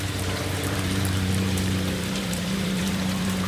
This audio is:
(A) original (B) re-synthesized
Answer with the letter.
B